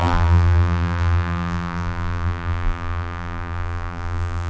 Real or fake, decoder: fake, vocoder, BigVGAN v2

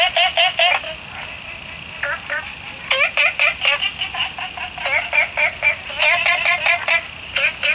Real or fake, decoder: real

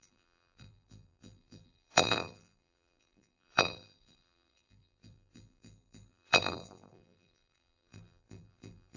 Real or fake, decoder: fake, vocoder, BigVGAN v2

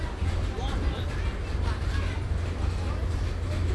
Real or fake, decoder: real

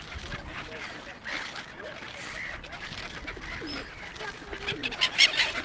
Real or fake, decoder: fake, vocoder, BigVGAN v2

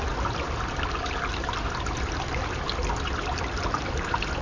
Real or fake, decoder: real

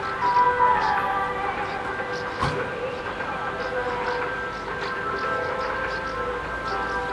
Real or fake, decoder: real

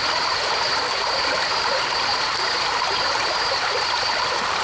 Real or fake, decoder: fake, vocoder, BigVGAN v2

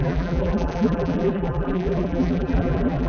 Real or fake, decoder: fake, vocoder, BigVGAN v2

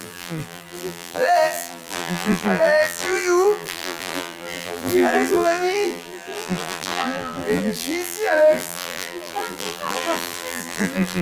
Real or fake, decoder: fake, vocoder, BigVGAN v2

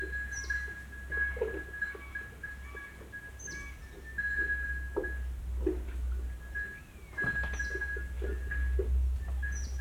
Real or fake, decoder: real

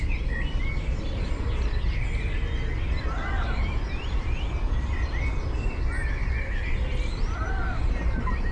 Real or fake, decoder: real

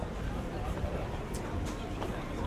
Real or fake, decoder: real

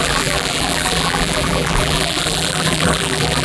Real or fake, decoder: fake, vocoder, BigVGAN v2